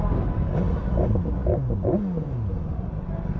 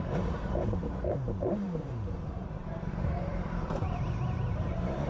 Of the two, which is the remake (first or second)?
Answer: second